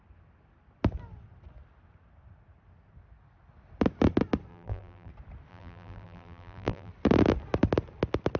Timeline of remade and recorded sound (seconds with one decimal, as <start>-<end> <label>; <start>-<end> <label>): 0.0-4.5 recorded; 4.5-5.1 remade; 5.1-5.5 recorded; 5.5-6.9 remade; 6.9-8.4 recorded